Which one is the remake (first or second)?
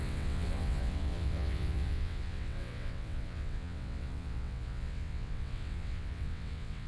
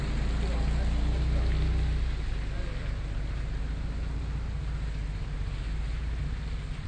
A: first